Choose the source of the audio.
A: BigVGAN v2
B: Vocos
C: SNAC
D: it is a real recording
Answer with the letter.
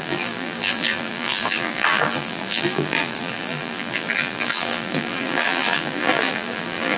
A